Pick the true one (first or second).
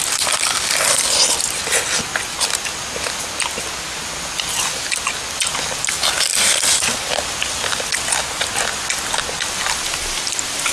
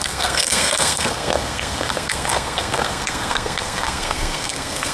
first